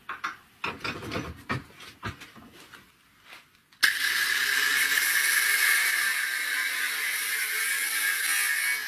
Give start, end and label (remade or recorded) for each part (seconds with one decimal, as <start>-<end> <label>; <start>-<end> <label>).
0.0-8.9 recorded